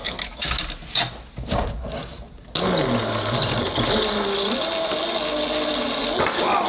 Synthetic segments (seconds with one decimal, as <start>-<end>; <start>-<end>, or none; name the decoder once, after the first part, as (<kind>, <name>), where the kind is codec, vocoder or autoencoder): 0.0-0.6 (autoencoder, DAC-VAE)